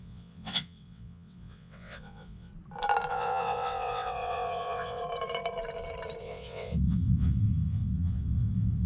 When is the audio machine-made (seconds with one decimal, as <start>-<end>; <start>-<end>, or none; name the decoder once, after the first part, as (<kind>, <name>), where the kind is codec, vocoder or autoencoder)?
0.0-2.5 (vocoder, WaveNeXt); 3.1-5.0; 6.2-8.9